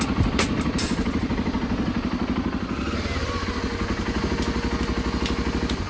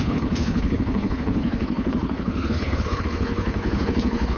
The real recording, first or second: first